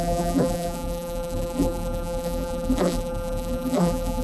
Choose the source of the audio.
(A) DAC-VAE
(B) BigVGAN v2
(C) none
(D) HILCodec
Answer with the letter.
B